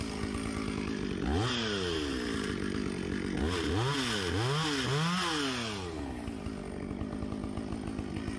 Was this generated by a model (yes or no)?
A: no